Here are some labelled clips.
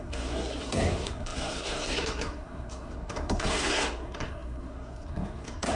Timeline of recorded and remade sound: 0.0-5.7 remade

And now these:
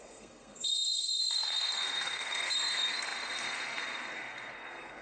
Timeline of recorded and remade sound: 0.0-5.0 remade

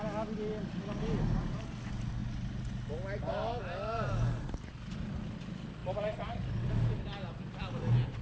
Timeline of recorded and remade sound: 0.0-8.2 recorded

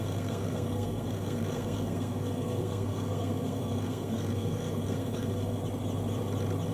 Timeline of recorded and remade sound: 0.0-5.6 remade; 5.6-6.7 recorded